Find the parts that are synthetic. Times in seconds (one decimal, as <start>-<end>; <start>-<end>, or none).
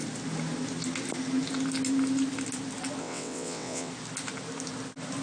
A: 3.0-3.9